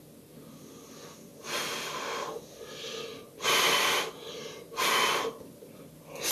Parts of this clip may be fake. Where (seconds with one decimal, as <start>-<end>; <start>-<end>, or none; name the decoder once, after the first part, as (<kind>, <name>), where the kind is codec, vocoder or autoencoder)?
none